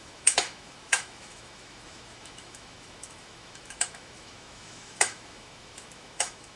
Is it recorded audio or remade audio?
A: remade